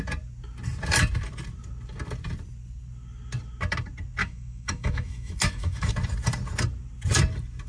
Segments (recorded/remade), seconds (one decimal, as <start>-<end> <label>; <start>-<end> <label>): 0.0-4.2 recorded; 4.2-5.9 remade; 5.9-7.7 recorded